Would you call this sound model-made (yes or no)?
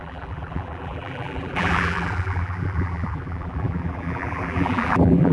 yes